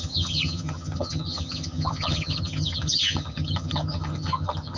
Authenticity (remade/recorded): remade